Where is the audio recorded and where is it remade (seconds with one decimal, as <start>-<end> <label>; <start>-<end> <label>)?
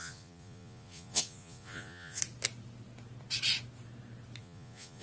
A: 0.0-2.2 remade; 2.2-4.4 recorded; 4.4-5.0 remade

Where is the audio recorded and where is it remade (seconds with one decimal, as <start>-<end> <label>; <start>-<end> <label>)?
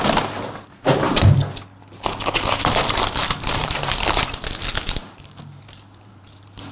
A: 0.0-1.4 remade; 1.4-2.6 recorded; 2.6-6.7 remade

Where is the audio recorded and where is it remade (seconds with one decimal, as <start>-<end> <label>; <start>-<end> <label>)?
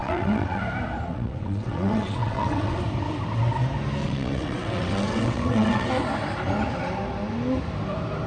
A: 0.0-0.6 remade; 0.6-1.1 recorded; 1.1-2.8 remade; 2.8-4.0 recorded; 4.0-5.9 remade; 5.9-8.3 recorded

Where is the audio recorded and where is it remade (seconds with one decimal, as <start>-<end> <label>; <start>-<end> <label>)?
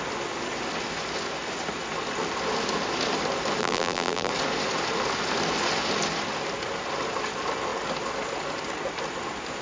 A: 0.0-3.6 recorded; 3.6-4.3 remade; 4.3-9.6 recorded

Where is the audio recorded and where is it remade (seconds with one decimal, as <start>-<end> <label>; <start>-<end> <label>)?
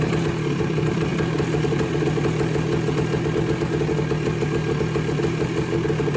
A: 0.0-6.2 recorded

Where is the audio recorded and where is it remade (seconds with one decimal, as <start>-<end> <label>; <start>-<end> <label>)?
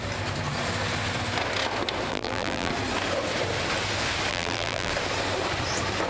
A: 0.0-2.1 recorded; 2.1-2.7 remade; 2.7-4.3 recorded; 4.3-4.9 remade; 4.9-6.1 recorded